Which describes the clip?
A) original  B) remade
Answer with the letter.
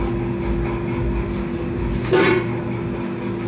A